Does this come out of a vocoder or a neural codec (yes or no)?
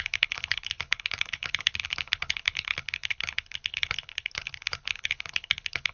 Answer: yes